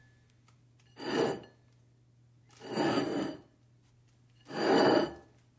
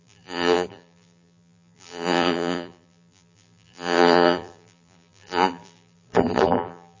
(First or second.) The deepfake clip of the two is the second